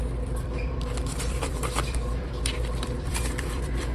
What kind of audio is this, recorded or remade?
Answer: remade